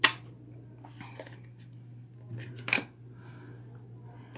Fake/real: real